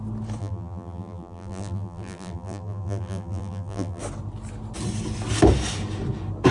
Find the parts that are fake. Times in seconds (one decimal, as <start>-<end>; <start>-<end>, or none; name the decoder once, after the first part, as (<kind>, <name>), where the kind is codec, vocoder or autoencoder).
0.4-4.0 (vocoder, BigVGAN v2)